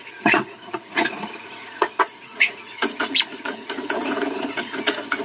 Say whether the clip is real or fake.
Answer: fake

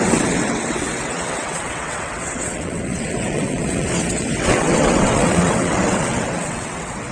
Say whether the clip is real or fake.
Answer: fake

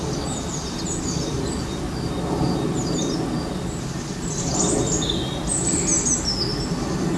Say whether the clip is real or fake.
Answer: real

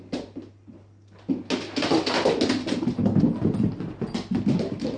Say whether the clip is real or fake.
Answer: real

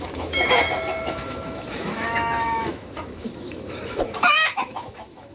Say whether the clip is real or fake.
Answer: fake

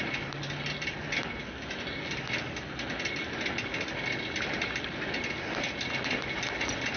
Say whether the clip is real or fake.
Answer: real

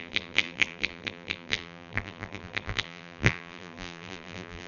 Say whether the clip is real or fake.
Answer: fake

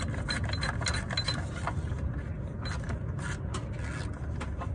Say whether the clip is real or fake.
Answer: real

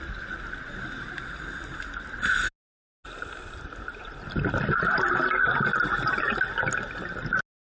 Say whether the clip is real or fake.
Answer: real